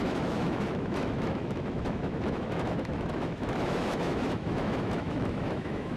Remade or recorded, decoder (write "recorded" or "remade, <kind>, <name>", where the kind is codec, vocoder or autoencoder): remade, autoencoder, DAC-VAE